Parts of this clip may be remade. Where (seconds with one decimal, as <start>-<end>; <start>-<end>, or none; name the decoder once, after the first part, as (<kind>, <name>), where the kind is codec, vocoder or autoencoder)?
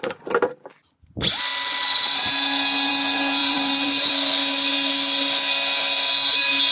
3.4-4.1 (vocoder, BigVGAN v2)